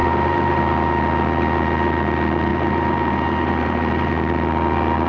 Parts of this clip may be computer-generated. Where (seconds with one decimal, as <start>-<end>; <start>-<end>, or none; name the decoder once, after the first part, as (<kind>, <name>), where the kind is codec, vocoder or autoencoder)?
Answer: 0.0-0.6 (vocoder, BigVGAN v2); 2.5-4.1

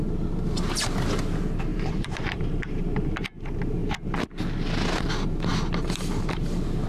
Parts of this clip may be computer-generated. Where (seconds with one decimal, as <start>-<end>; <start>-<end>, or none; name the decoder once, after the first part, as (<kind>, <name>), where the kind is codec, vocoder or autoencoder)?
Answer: 1.7-2.8 (vocoder, BigVGAN v2)

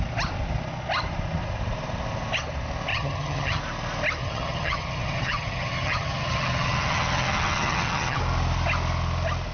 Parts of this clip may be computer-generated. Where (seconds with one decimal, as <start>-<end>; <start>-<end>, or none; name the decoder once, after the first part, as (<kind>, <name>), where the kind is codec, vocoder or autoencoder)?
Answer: 2.9-3.6 (vocoder, HiFi-GAN); 4.2-8.2

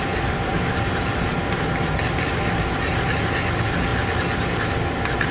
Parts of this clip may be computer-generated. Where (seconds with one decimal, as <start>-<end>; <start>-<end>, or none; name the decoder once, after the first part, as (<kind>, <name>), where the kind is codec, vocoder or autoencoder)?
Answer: none

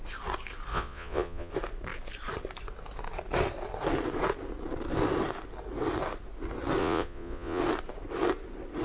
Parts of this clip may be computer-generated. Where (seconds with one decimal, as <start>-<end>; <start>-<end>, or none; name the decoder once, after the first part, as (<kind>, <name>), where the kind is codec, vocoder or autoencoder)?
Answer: 0.7-1.5 (vocoder, Vocos); 6.8-7.6

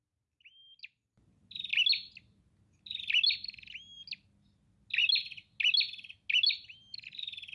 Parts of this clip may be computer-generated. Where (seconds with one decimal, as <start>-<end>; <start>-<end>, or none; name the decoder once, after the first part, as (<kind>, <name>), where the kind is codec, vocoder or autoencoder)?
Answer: none